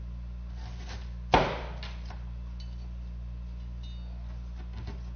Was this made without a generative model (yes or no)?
yes